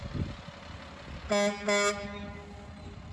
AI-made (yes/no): no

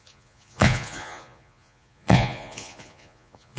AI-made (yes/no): yes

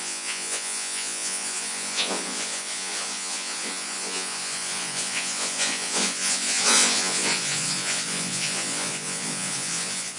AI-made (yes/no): yes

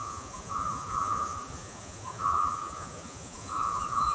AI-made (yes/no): yes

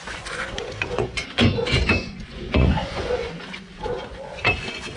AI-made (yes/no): yes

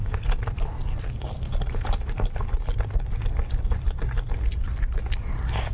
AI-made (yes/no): no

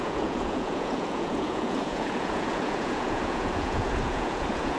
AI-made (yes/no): yes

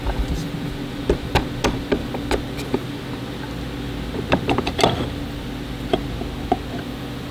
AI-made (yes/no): no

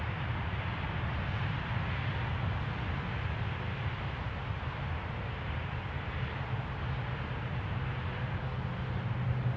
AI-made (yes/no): no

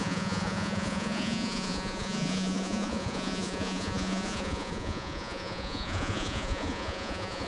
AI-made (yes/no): yes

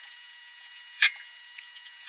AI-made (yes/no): yes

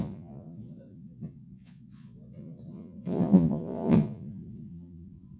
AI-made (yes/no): yes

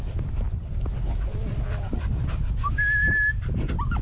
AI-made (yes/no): no